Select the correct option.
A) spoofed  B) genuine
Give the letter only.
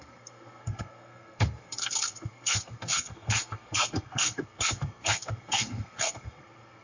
A